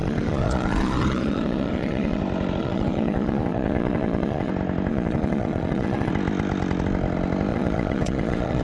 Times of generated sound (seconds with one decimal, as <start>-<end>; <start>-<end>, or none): 0.0-2.2; 2.6-4.5; 4.9-6.1; 7.5-8.6